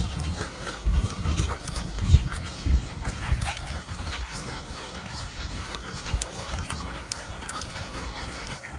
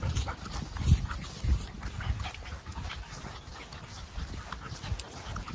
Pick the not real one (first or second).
first